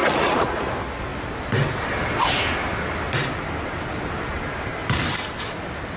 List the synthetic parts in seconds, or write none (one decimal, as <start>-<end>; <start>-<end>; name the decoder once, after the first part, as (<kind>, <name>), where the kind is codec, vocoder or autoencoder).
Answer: 0.0-0.7 (vocoder, Vocos)